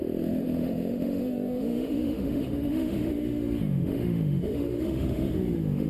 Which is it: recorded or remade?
remade